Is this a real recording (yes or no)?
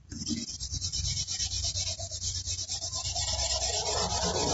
yes